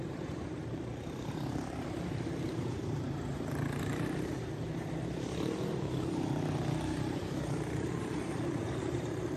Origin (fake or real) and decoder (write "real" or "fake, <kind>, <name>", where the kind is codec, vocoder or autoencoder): fake, vocoder, BigVGAN v2